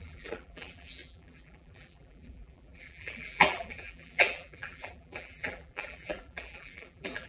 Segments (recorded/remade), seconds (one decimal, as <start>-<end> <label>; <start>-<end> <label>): 0.0-7.3 remade